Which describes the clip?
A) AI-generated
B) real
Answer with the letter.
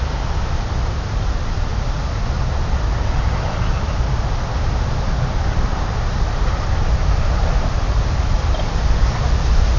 B